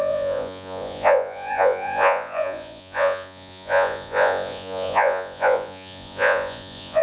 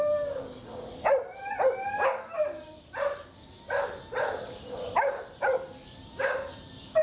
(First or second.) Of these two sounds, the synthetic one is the first